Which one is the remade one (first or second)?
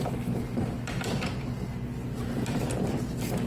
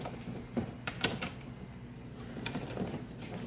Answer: second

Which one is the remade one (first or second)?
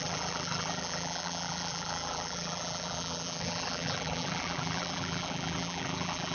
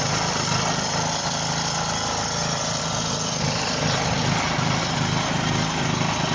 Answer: first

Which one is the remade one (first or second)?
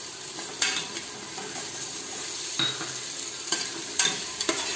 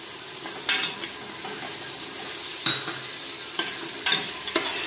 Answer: first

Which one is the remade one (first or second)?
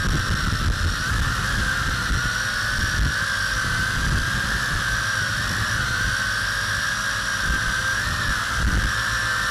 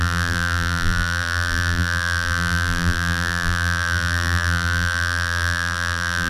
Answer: second